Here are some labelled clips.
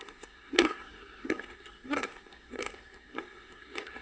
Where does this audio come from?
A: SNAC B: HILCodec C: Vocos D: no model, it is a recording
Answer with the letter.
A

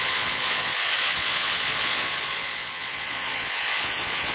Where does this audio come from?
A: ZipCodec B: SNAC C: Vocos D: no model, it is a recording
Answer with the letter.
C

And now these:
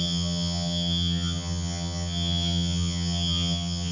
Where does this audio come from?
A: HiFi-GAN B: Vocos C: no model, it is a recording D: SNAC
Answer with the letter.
A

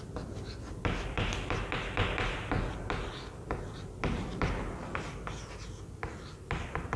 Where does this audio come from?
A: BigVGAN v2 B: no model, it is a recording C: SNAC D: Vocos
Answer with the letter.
B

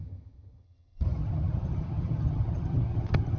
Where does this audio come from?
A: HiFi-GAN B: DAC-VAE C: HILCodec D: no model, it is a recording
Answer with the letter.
A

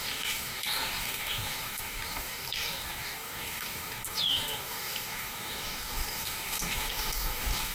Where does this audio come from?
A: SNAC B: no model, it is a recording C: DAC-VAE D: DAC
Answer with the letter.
D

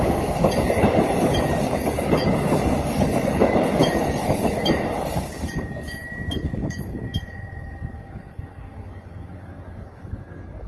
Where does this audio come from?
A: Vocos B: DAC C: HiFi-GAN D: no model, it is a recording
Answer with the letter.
B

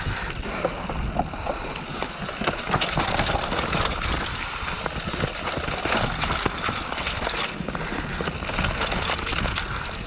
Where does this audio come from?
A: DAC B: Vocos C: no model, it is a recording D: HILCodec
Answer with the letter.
C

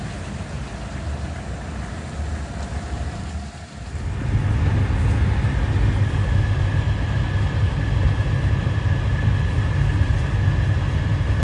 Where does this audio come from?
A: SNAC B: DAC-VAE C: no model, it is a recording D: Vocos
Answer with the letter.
C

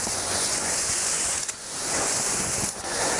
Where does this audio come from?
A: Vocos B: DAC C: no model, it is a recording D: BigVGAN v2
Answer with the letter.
A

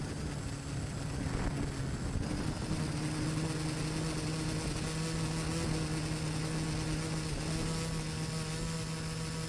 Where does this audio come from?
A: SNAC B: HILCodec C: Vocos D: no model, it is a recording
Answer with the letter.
D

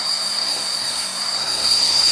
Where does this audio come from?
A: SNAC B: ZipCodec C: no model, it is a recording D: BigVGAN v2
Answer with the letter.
A